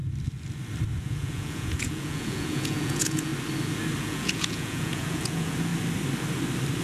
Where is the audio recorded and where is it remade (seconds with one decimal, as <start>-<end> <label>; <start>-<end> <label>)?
0.0-1.0 recorded; 1.0-3.3 remade; 3.3-4.0 recorded; 4.0-5.7 remade; 5.7-6.8 recorded